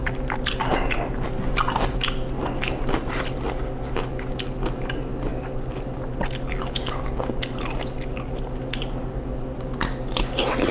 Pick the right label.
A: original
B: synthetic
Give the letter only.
A